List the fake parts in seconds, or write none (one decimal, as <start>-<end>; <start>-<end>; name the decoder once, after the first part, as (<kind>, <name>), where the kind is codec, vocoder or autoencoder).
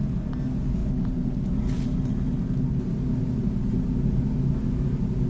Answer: none